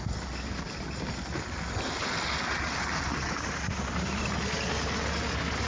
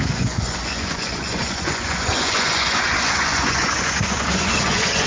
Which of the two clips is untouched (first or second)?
first